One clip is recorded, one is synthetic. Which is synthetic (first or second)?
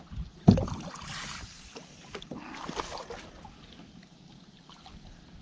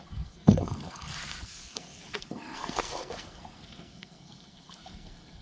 second